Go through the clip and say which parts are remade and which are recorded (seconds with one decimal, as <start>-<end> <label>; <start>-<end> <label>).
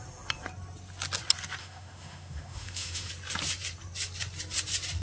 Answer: 0.0-1.6 recorded; 1.6-3.1 remade; 3.1-5.0 recorded